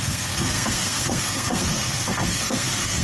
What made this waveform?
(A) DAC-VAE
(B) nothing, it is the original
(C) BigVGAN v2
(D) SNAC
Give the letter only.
D